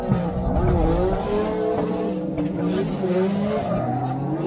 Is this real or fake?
real